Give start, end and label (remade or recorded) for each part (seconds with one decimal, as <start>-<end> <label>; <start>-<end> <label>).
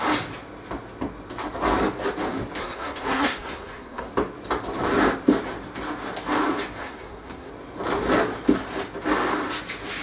0.0-2.6 recorded; 2.6-4.1 remade; 4.1-6.8 recorded; 6.8-7.5 remade; 7.5-10.0 recorded